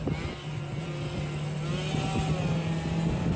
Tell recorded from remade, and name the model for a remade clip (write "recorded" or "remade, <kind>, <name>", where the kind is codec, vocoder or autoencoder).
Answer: recorded